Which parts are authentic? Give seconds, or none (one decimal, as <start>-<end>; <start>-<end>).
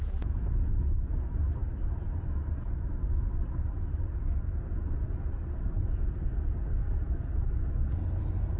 0.7-8.6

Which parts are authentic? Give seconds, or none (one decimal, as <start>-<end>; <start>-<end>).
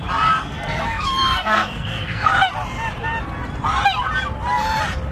0.0-0.4; 2.3-5.1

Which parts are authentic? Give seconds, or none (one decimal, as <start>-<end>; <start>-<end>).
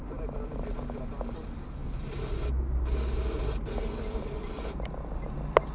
0.0-5.7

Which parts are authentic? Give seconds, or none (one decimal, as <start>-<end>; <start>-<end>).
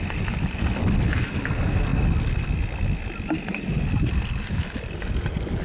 0.0-5.6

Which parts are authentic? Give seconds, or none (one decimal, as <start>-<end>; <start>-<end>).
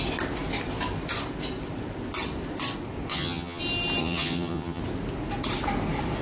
0.0-3.1; 3.6-4.0; 4.8-6.2